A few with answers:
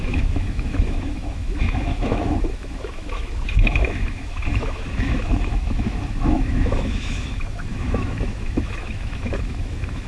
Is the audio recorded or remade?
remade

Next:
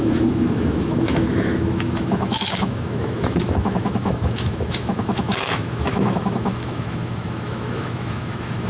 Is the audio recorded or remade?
remade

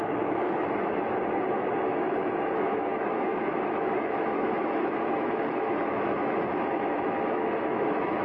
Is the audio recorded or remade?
remade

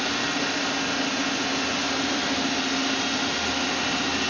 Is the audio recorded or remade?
recorded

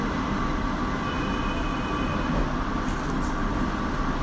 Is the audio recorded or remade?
recorded